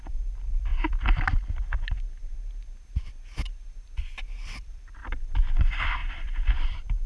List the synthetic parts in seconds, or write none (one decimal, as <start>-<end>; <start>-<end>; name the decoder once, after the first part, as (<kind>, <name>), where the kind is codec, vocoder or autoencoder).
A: 0.0-0.7 (vocoder, BigVGAN v2); 4.2-7.1